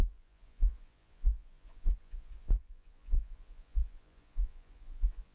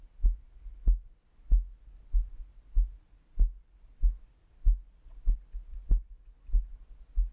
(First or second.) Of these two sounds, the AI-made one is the first